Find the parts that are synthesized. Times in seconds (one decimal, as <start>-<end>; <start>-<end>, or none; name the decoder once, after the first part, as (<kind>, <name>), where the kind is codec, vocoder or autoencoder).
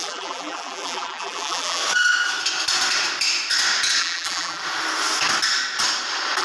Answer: 0.0-1.8 (vocoder, BigVGAN v2); 4.0-4.6